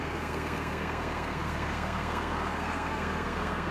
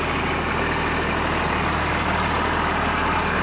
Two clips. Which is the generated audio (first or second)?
first